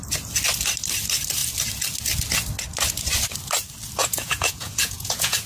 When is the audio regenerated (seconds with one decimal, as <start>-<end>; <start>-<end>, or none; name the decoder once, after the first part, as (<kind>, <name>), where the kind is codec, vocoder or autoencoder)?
4.0-5.5 (vocoder, Vocos)